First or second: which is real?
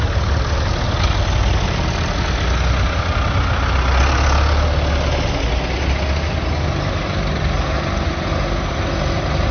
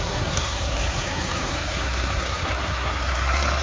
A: first